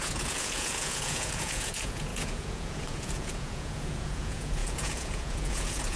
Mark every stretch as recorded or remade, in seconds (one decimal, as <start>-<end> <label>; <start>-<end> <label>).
0.0-6.0 remade